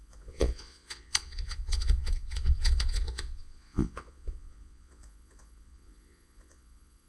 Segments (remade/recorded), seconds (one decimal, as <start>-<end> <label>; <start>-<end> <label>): 0.0-7.1 remade